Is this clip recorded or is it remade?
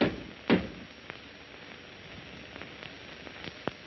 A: recorded